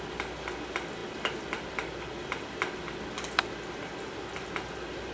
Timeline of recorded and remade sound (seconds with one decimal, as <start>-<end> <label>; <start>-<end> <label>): 0.0-5.1 recorded